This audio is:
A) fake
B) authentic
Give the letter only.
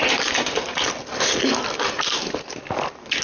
B